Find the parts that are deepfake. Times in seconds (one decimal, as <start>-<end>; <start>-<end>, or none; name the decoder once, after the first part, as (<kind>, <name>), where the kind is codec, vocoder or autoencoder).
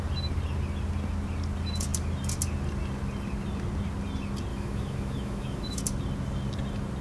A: 4.5-5.8 (autoencoder, DAC-VAE)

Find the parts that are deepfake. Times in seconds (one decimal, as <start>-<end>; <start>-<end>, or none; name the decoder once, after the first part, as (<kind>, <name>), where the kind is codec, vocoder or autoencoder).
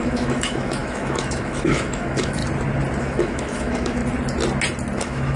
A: 0.0-2.4 (autoencoder, DAC-VAE); 3.0-4.0; 5.0-5.4